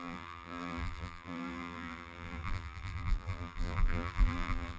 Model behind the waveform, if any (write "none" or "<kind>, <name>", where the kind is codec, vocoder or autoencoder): vocoder, BigVGAN v2